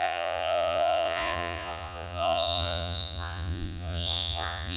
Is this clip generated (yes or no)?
yes